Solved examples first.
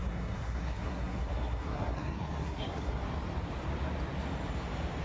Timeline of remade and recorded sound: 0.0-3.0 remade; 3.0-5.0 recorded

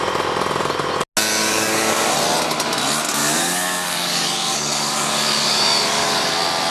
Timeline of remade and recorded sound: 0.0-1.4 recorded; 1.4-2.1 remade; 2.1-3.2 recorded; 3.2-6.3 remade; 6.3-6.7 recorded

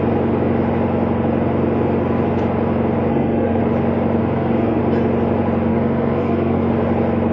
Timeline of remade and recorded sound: 0.0-3.1 recorded; 3.1-3.6 remade; 3.6-4.2 recorded; 4.2-4.8 remade; 4.8-5.7 recorded; 5.7-6.7 remade; 6.7-7.3 recorded

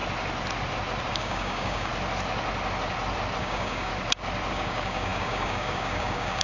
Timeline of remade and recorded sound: 0.0-1.1 recorded; 1.1-1.9 remade; 1.9-3.4 recorded; 3.4-3.9 remade; 3.9-4.5 recorded; 4.5-6.4 remade